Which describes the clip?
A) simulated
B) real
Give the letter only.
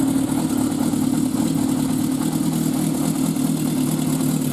B